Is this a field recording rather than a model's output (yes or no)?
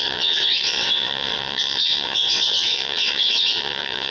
no